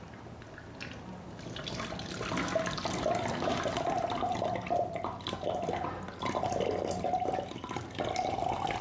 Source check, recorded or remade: recorded